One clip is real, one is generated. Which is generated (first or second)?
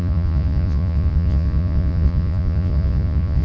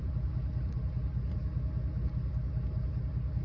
first